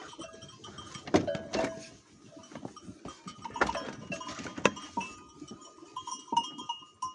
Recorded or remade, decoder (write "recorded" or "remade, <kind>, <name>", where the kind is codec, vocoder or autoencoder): recorded